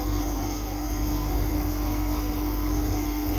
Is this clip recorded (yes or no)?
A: no